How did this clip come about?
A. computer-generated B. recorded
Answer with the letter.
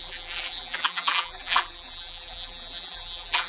A